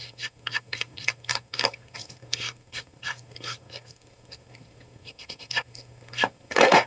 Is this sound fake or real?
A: fake